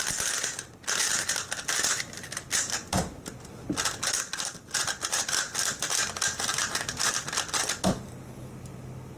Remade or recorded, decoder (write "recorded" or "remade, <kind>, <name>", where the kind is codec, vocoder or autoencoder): recorded